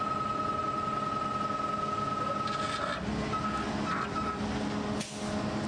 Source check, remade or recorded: recorded